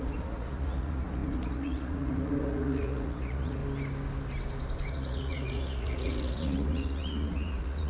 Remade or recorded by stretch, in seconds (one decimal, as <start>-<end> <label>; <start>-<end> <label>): 0.0-3.6 remade; 3.6-4.9 recorded; 4.9-7.9 remade